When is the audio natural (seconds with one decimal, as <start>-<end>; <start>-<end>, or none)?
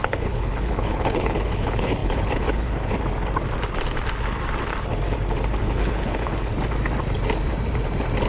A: 2.9-5.6; 6.5-8.3